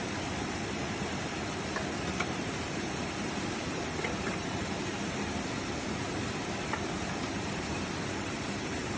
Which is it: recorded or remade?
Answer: remade